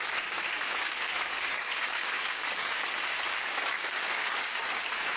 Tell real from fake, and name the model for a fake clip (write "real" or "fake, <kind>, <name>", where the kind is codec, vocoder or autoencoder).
fake, codec, DAC